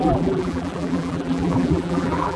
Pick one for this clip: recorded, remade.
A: remade